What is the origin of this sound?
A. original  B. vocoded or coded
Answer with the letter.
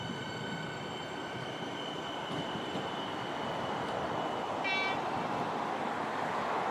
B